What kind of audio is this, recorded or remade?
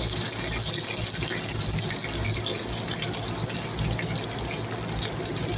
recorded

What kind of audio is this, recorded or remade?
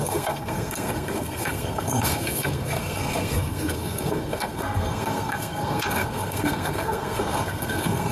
remade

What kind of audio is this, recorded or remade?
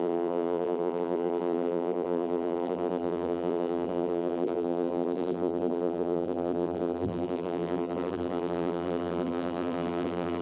remade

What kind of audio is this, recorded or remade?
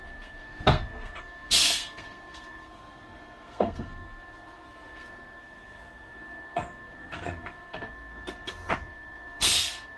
remade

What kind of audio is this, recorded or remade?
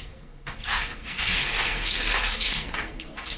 remade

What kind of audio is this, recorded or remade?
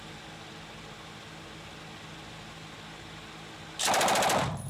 recorded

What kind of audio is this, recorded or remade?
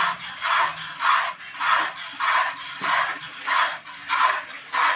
recorded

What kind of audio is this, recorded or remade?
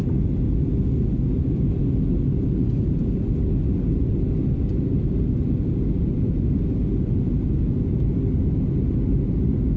recorded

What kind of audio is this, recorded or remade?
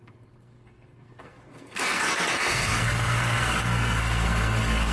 remade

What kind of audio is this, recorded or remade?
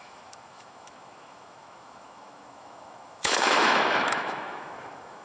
remade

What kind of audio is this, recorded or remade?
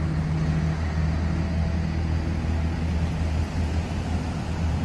recorded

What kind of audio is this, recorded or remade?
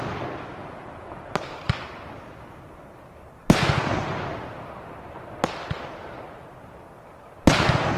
recorded